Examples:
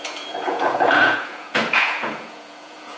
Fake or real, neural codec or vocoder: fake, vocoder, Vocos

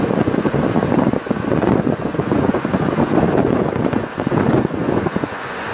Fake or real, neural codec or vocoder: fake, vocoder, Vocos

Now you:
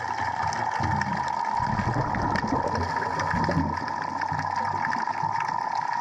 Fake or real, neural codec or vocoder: real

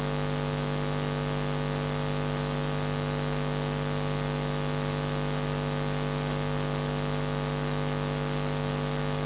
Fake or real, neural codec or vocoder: real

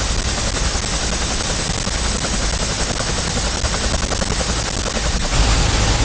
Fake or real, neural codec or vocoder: real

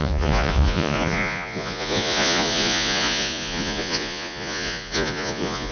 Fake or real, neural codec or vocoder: fake, vocoder, Vocos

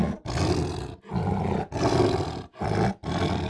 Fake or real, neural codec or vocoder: real